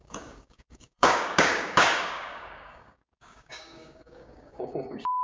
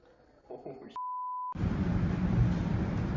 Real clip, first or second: second